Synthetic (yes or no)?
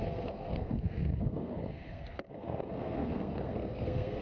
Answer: yes